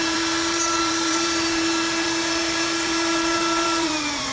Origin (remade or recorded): remade